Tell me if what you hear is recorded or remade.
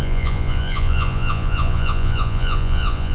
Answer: remade